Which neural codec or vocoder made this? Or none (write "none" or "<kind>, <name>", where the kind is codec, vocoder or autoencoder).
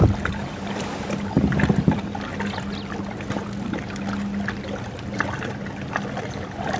none